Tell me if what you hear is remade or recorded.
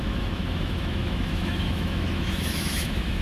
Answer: remade